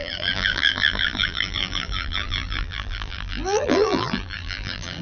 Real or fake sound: fake